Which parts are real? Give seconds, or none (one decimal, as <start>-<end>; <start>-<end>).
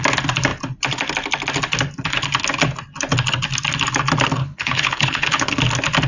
0.0-4.4; 5.6-6.1